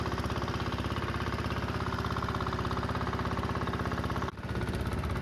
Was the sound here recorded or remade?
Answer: recorded